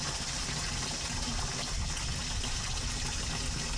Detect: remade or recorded recorded